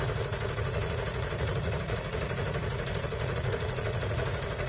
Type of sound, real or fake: fake